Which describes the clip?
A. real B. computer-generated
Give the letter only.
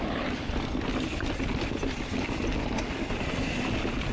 A